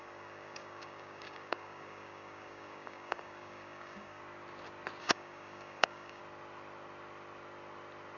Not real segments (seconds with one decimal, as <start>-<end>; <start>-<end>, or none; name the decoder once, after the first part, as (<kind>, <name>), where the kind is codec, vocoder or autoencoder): 0.0-4.2 (codec, DAC); 5.0-6.2